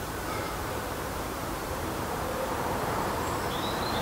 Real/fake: fake